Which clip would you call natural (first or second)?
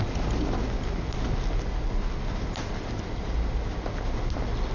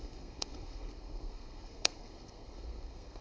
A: first